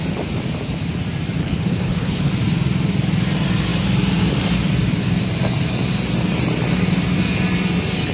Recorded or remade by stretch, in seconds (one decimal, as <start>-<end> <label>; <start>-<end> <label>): 0.0-1.4 recorded; 1.4-2.3 remade; 2.3-8.1 recorded